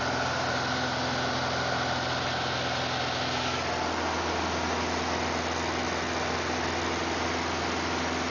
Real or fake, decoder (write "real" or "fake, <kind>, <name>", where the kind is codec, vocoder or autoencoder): real